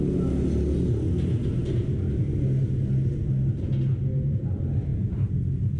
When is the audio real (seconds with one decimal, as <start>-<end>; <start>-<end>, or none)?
0.0-5.8